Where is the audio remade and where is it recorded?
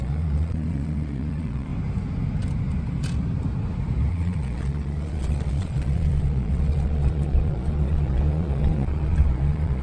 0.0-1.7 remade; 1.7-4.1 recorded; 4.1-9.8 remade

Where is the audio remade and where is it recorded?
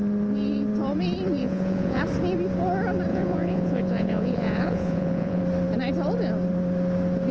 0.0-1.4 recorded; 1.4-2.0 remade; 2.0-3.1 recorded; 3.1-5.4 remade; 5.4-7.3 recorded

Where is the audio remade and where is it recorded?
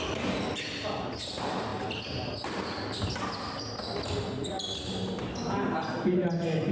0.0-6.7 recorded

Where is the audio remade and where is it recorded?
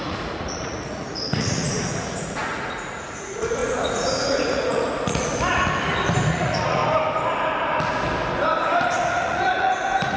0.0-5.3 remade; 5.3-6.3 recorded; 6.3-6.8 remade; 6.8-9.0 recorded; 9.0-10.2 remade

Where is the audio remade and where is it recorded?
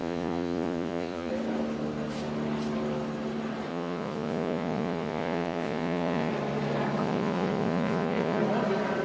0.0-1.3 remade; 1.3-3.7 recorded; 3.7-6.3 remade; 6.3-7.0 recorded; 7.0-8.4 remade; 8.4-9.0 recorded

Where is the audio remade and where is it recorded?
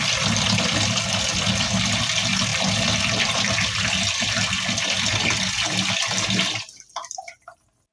0.0-7.9 recorded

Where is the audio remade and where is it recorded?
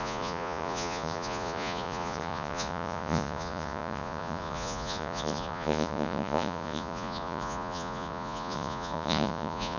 0.0-9.8 remade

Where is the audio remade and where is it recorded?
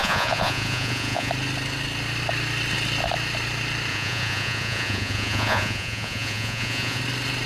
0.0-1.3 remade; 1.3-3.9 recorded; 3.9-7.0 remade; 7.0-7.5 recorded